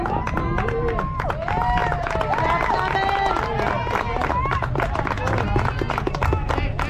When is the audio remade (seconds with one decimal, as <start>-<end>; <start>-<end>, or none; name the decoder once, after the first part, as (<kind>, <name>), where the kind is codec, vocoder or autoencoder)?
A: none

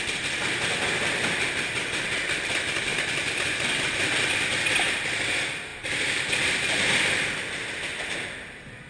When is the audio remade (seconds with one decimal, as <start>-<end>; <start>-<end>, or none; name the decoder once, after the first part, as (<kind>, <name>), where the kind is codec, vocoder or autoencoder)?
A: none

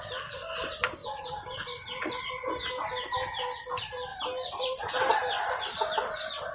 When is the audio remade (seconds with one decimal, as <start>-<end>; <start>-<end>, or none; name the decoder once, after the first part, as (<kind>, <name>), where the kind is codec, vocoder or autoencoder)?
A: 1.0-2.2 (vocoder, BigVGAN v2); 4.1-4.9

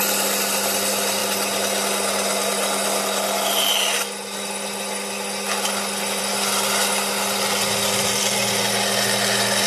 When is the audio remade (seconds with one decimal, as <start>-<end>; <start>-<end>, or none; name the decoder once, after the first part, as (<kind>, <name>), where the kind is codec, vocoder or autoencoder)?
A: none

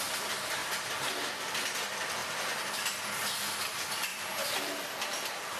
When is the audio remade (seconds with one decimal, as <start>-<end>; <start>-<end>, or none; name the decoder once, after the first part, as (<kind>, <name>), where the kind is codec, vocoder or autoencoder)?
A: 0.6-1.2 (vocoder, BigVGAN v2); 2.2-3.0; 4.1-4.7

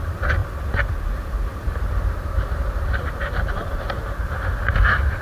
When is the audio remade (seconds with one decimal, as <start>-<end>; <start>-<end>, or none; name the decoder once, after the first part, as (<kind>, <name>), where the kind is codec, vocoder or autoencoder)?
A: 0.4-1.1 (vocoder, BigVGAN v2); 1.5-4.6

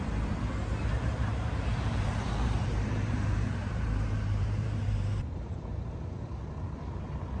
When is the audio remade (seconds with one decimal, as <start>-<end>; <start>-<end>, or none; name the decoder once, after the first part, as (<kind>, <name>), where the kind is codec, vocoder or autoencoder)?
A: 1.3-5.7 (vocoder, BigVGAN v2)

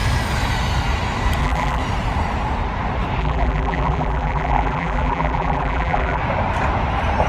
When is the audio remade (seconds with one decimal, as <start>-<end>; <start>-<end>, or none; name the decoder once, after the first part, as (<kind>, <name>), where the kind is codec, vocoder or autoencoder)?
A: 1.4-1.8 (vocoder, BigVGAN v2); 3.2-6.2